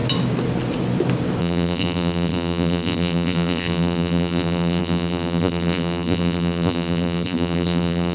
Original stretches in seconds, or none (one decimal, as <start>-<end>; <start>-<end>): 0.0-1.4